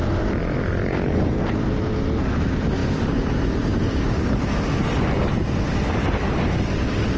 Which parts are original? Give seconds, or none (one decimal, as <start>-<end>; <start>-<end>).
0.0-7.2